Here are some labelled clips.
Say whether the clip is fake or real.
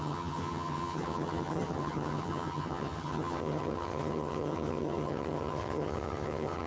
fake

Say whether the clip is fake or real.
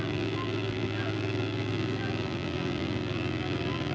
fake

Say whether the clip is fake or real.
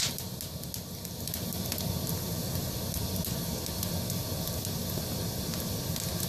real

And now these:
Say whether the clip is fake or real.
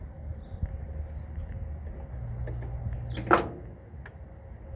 real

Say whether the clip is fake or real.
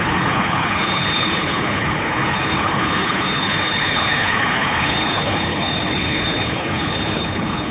fake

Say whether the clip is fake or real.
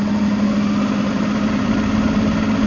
real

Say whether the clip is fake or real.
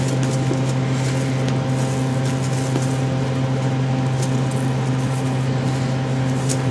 real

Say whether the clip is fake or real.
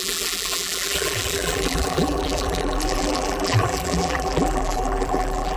fake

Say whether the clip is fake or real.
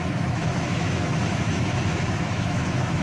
fake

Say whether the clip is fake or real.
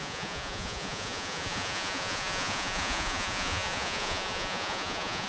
fake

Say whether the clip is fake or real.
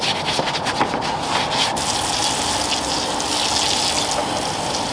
real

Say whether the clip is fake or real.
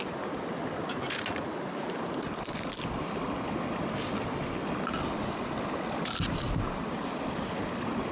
real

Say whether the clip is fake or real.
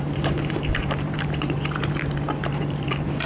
fake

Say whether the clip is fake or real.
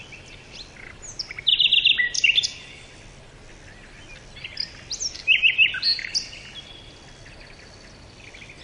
real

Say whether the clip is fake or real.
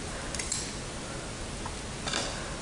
real